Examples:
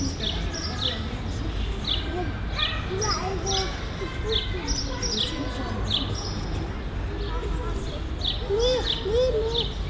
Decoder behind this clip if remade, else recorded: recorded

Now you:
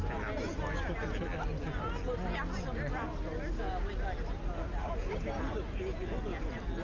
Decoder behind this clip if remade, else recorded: recorded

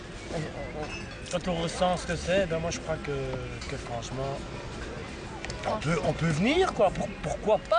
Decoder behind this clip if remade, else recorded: recorded